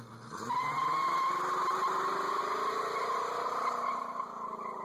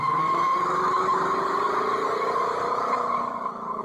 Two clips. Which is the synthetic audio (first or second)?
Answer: second